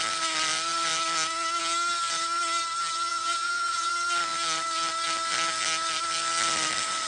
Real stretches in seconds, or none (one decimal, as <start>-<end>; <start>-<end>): 0.0-3.1; 3.9-7.1